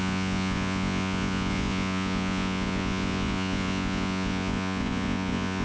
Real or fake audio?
fake